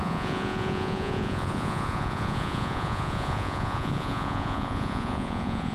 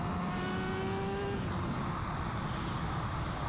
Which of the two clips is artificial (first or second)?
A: first